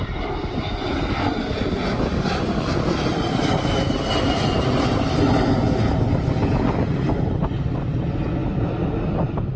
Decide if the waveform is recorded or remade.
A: recorded